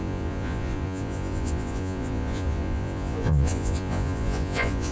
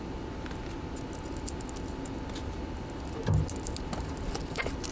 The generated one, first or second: first